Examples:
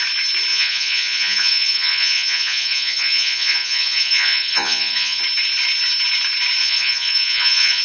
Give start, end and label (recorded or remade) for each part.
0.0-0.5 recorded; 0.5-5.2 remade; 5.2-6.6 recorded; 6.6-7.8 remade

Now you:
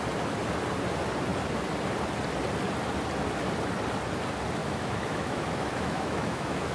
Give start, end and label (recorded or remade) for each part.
0.0-4.6 recorded; 4.6-6.7 remade